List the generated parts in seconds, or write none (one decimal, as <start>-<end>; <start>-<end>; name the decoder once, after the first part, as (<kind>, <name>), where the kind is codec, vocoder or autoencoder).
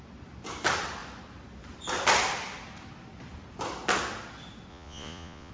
4.7-5.5 (vocoder, Vocos)